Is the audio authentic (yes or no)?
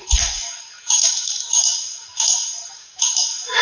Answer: no